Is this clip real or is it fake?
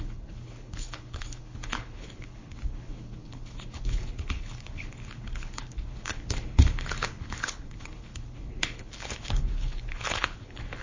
fake